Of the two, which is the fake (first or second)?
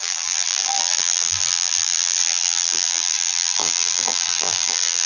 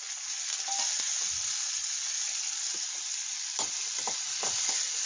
first